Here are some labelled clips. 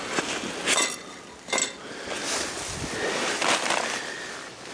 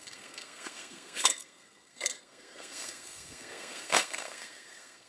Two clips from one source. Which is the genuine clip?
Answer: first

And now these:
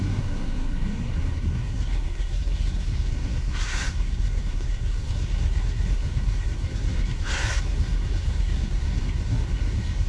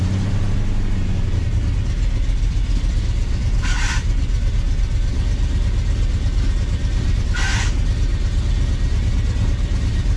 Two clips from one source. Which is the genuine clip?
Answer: second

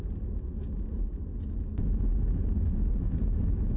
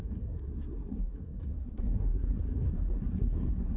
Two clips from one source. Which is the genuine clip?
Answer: first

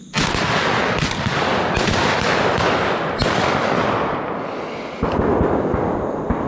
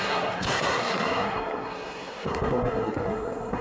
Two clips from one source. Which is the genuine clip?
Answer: first